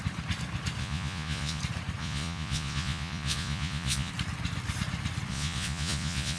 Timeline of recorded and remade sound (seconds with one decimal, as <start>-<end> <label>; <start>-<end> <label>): 0.0-0.8 recorded; 0.8-1.6 remade; 1.6-2.0 recorded; 2.0-4.1 remade; 4.1-5.3 recorded; 5.3-6.4 remade